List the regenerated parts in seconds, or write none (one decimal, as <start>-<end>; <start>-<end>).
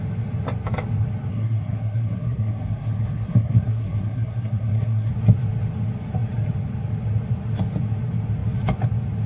1.3-5.1